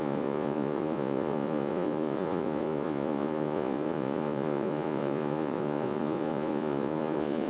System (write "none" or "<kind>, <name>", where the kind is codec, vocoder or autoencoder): vocoder, Vocos